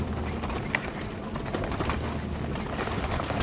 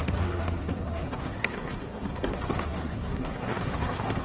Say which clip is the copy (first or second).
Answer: second